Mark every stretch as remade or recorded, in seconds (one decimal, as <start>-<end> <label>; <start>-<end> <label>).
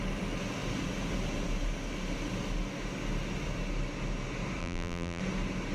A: 0.0-4.6 recorded; 4.6-5.2 remade; 5.2-5.7 recorded